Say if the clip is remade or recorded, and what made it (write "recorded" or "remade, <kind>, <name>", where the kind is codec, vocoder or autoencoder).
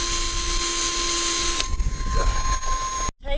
recorded